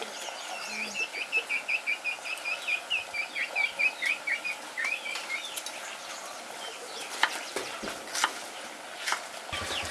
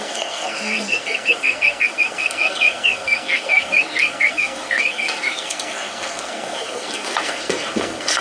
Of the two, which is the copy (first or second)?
second